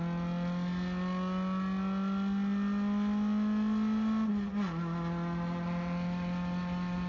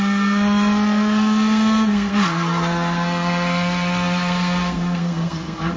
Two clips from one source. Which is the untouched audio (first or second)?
first